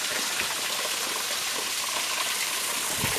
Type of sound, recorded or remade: remade